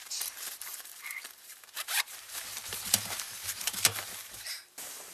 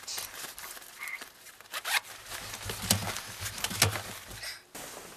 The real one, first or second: second